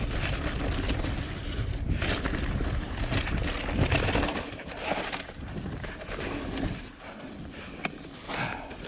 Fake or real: real